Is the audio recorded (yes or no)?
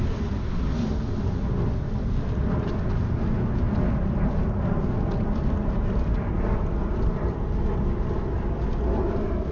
yes